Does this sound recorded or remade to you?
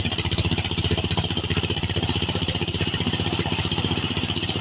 remade